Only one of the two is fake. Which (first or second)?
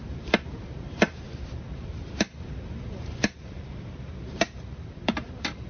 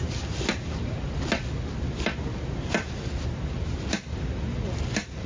first